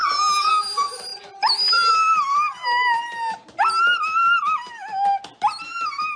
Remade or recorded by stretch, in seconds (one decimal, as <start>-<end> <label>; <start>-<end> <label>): 0.0-6.2 recorded